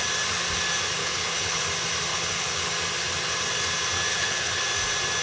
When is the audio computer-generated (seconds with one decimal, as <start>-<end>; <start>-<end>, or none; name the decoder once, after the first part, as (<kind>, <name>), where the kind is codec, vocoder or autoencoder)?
1.0-1.6 (codec, HILCodec); 2.1-2.7; 4.1-4.6